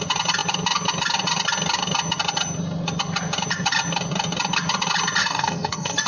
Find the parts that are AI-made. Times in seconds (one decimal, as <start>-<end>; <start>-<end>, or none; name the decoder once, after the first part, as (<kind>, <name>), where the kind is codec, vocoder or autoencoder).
5.2-6.1 (codec, SNAC)